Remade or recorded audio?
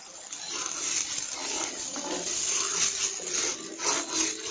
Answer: recorded